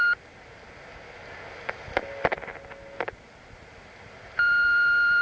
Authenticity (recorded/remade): recorded